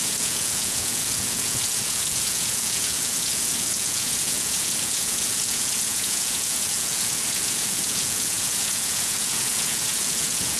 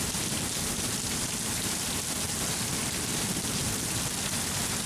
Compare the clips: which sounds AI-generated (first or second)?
first